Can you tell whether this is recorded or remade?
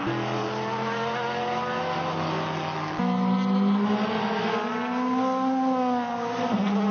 recorded